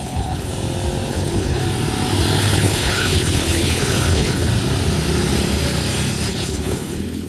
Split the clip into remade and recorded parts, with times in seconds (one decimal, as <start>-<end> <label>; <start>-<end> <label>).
0.0-0.5 remade; 0.5-1.1 recorded; 1.1-1.6 remade; 1.6-2.4 recorded; 2.4-4.5 remade; 4.5-6.3 recorded; 6.3-7.3 remade